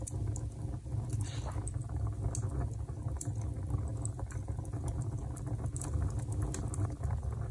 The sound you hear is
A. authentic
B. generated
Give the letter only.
A